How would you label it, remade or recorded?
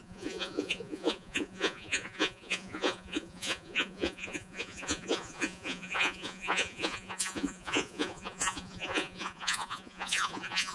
remade